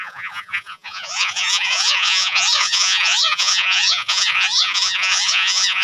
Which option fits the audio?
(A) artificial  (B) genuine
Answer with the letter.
A